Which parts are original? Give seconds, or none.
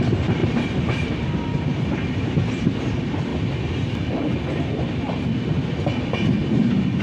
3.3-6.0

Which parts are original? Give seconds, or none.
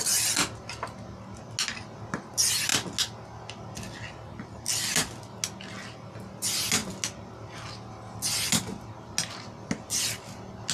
0.0-10.7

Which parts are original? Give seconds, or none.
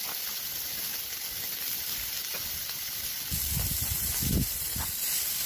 0.0-5.5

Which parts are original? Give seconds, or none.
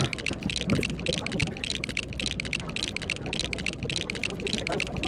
0.0-1.4; 2.0-5.1